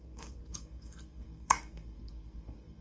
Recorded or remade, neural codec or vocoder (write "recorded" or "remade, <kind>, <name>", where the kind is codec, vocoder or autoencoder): remade, codec, SNAC